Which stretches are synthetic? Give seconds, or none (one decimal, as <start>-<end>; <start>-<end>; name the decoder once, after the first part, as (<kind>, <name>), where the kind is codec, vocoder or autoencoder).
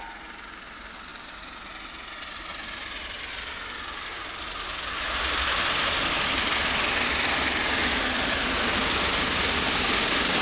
none